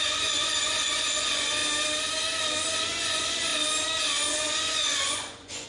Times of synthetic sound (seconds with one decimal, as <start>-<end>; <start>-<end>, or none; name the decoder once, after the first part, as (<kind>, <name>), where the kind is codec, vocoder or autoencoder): 0.0-1.6 (vocoder, Vocos); 2.8-3.5; 4.3-5.7